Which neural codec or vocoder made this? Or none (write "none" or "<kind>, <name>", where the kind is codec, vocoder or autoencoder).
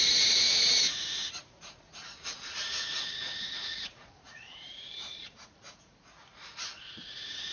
vocoder, Vocos